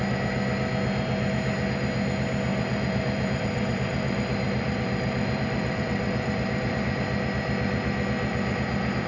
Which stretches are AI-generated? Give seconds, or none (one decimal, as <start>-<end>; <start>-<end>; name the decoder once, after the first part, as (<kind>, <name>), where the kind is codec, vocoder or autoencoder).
2.5-6.8 (vocoder, BigVGAN v2)